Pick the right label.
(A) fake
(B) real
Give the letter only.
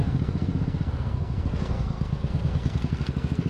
A